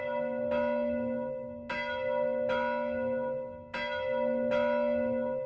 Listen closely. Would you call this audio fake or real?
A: real